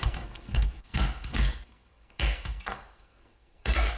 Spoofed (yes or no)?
yes